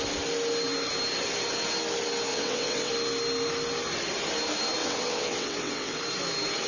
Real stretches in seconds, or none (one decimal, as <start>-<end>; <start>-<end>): 0.0-2.3; 2.9-4.8; 6.0-6.7